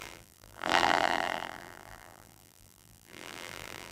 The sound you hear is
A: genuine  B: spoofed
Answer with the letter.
B